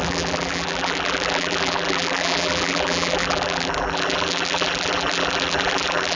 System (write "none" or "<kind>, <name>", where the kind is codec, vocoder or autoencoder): vocoder, BigVGAN v2